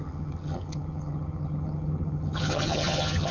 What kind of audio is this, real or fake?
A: fake